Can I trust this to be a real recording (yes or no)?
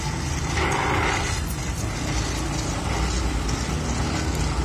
yes